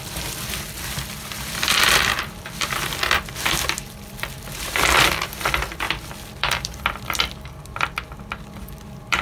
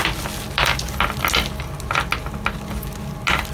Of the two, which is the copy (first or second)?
first